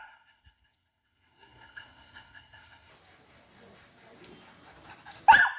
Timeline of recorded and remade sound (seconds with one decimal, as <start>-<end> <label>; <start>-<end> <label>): 0.0-2.9 remade; 2.9-5.6 recorded